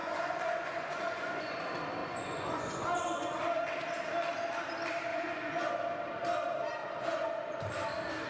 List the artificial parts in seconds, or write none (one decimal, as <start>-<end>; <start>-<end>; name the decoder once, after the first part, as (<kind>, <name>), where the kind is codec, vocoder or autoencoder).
0.0-1.6 (vocoder, Vocos); 2.0-3.4; 5.1-5.7; 6.8-7.3